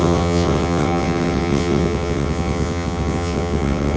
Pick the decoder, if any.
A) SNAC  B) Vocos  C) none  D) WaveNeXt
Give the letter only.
D